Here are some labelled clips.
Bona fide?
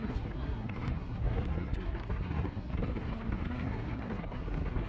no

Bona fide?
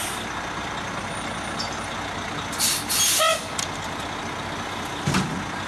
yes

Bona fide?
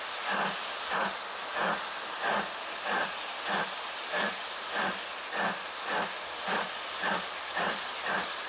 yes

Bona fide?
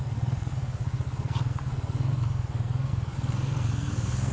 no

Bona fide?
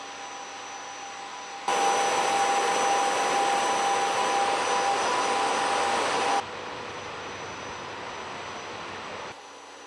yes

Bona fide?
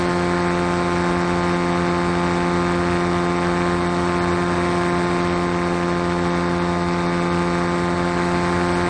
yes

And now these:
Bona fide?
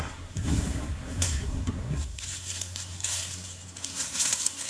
no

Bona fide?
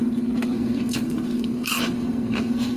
no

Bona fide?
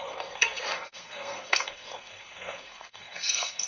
no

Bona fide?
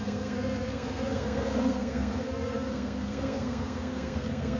no